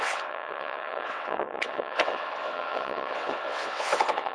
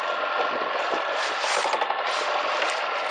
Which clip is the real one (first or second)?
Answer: second